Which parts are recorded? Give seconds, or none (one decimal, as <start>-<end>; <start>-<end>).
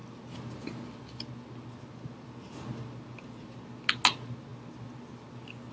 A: 0.0-5.7